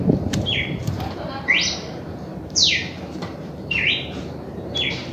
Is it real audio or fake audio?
fake